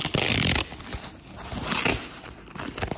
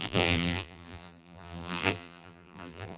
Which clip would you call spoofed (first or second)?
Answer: second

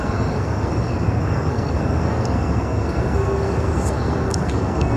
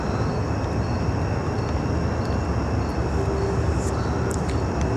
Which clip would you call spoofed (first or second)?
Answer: first